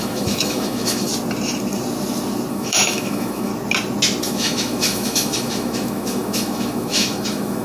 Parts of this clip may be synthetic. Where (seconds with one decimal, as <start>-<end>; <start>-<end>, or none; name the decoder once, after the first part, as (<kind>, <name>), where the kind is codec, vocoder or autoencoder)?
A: 0.0-1.1 (autoencoder, DAC-VAE); 2.5-3.5; 4.2-7.6